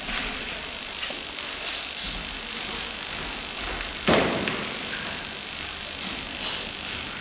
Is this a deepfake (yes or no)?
no